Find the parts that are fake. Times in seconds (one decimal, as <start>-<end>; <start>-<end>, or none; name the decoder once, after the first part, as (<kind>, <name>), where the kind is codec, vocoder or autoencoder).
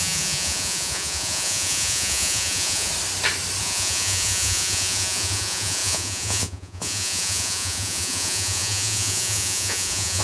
0.0-2.9 (vocoder, Vocos); 3.6-10.2